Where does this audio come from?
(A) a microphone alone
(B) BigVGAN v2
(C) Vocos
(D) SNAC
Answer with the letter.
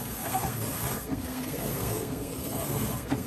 D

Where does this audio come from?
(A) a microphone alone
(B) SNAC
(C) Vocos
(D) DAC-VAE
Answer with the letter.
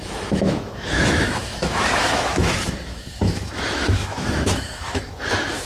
D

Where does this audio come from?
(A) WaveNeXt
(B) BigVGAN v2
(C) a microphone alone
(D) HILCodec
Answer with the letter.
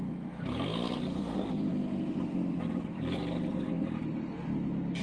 C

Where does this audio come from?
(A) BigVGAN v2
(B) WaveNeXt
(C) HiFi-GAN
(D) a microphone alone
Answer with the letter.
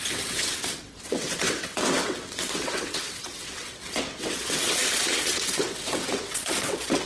B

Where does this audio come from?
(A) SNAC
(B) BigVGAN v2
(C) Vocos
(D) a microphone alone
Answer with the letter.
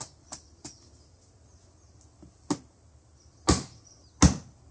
D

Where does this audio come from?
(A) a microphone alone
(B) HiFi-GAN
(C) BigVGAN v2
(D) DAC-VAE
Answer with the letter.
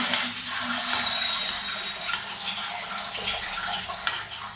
A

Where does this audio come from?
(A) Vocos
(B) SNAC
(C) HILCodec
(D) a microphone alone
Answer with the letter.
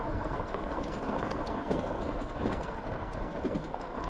B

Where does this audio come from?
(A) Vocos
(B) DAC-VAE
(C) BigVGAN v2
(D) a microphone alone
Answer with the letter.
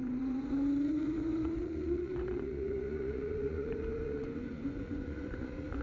A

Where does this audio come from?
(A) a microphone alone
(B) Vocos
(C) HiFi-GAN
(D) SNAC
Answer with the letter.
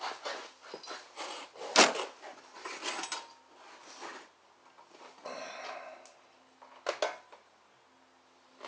A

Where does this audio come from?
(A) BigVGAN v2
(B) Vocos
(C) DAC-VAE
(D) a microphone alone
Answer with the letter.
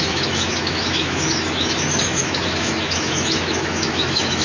C